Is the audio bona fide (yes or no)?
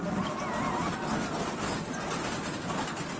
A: yes